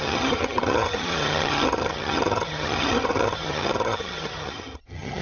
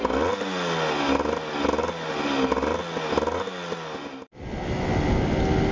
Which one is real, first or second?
second